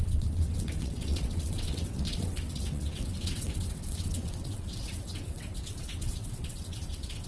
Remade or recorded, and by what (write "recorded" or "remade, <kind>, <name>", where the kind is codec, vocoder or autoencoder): remade, vocoder, WaveNeXt